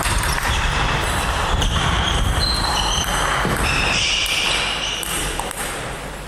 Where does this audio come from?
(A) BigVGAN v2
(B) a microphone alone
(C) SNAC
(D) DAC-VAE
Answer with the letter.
A